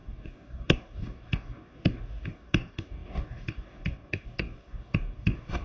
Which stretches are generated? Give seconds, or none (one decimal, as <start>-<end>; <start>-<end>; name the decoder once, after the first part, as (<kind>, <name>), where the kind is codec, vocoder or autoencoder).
0.0-5.6 (codec, DAC)